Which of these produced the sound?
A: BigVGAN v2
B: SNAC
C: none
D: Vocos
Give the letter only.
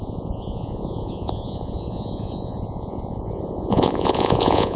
D